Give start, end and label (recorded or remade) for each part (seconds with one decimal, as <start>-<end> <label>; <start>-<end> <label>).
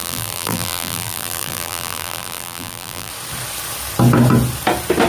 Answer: 0.0-3.1 remade; 3.1-5.1 recorded